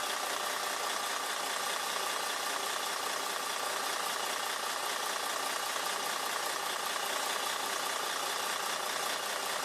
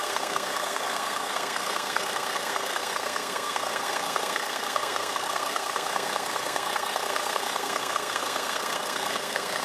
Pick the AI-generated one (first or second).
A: second